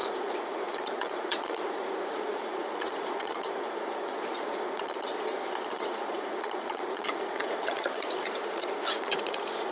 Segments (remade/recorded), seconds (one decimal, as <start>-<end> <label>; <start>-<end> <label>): 0.0-5.1 remade; 5.1-5.7 recorded; 5.7-9.7 remade